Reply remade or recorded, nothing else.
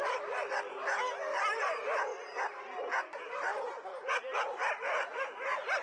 recorded